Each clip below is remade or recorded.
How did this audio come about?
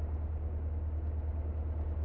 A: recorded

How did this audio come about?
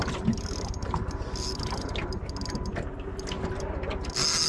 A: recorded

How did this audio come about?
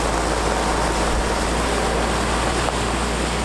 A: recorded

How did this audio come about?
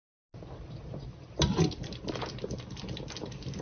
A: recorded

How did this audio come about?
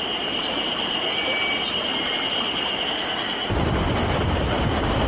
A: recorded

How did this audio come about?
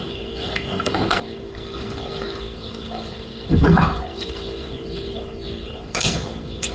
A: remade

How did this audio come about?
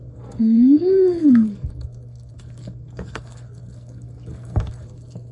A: remade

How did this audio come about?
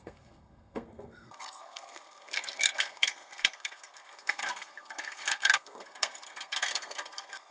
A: remade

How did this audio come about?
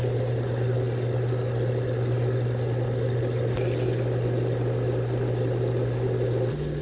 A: recorded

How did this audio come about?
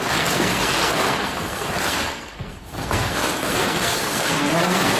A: remade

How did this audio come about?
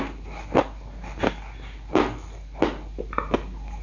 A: recorded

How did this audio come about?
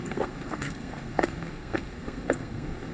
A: remade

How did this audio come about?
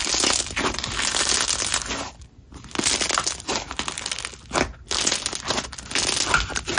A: recorded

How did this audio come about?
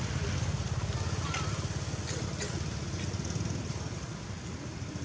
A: recorded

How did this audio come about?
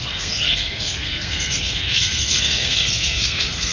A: remade